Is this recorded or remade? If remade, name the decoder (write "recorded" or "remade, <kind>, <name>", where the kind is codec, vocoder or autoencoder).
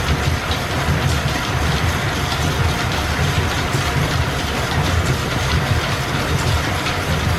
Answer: recorded